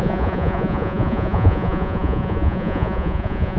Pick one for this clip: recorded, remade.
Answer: remade